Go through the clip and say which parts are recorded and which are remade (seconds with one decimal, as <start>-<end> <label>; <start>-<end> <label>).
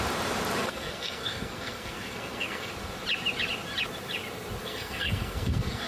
0.0-0.6 recorded; 0.6-2.7 remade; 2.7-4.6 recorded; 4.6-5.9 remade